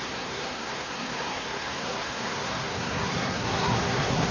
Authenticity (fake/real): fake